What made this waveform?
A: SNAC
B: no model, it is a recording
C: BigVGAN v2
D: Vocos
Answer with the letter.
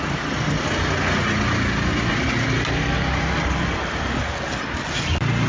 B